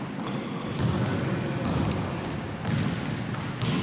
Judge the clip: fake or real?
real